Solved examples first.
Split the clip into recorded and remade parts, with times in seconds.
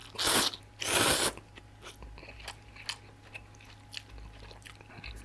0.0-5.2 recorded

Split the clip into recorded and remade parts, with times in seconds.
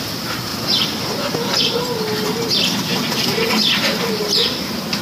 0.0-2.9 recorded; 2.9-4.2 remade; 4.2-5.0 recorded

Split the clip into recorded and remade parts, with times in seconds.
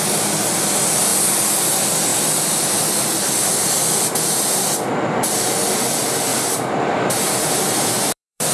0.0-6.3 recorded; 6.3-8.5 remade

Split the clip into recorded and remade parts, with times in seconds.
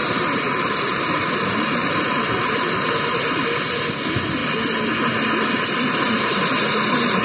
0.0-3.2 remade; 3.2-7.2 recorded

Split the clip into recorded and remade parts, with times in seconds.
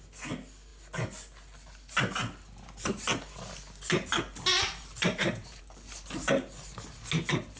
0.0-4.5 recorded; 4.5-5.6 remade; 5.6-7.6 recorded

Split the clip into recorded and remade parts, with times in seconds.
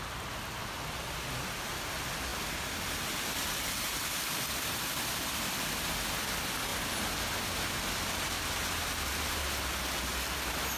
0.0-10.8 recorded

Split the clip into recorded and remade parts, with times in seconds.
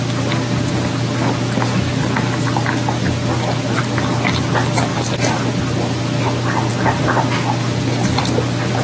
0.0-4.9 remade; 4.9-5.6 recorded; 5.6-6.7 remade; 6.7-7.2 recorded; 7.2-8.8 remade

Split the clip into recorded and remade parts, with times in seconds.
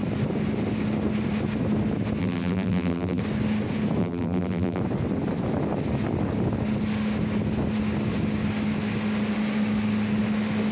0.0-2.2 recorded; 2.2-3.2 remade; 3.2-4.0 recorded; 4.0-4.8 remade; 4.8-10.7 recorded